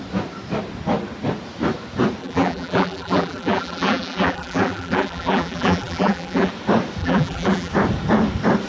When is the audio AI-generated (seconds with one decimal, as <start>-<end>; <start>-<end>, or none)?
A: 2.2-6.5; 7.0-7.7